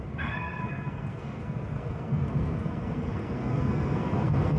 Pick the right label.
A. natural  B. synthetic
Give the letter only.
B